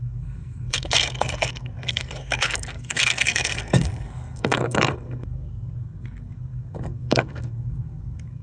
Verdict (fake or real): fake